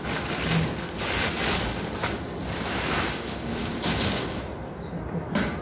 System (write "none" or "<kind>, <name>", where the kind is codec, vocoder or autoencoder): none